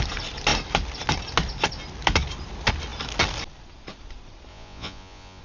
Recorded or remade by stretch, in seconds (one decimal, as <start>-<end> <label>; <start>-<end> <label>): 0.0-4.5 recorded; 4.5-5.4 remade